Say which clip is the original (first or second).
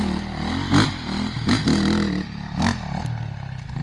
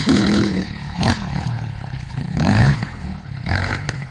first